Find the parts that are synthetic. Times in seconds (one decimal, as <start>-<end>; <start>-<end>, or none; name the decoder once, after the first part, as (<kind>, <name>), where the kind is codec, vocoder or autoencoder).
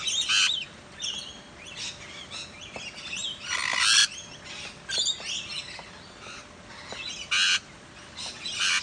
none